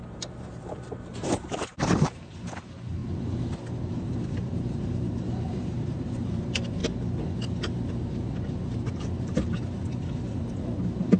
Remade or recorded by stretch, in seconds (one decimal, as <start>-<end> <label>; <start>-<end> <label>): 0.0-3.0 remade; 3.0-3.9 recorded; 3.9-6.8 remade; 6.8-8.9 recorded; 8.9-11.2 remade